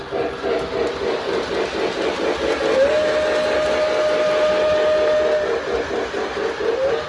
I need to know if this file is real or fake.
real